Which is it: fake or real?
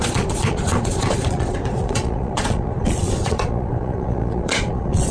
fake